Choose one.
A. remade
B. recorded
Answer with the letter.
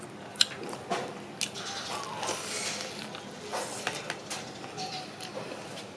B